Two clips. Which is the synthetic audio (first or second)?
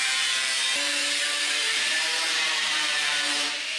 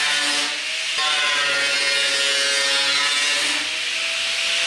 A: first